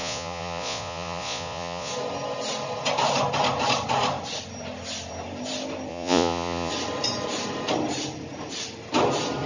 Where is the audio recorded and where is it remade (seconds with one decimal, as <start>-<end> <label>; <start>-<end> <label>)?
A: 0.0-1.9 remade; 1.9-5.9 recorded; 5.9-6.7 remade; 6.7-9.5 recorded